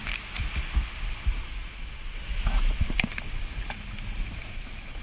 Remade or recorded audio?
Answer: recorded